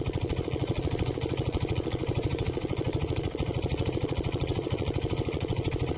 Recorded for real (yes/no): no